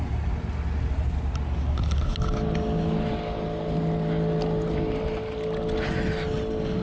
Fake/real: real